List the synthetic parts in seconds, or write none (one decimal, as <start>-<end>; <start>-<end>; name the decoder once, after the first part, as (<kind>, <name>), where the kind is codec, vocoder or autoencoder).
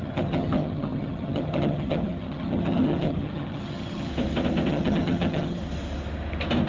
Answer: 0.0-4.1 (vocoder, HiFi-GAN); 4.7-5.6